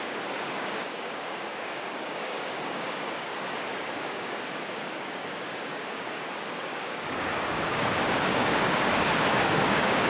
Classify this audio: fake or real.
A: fake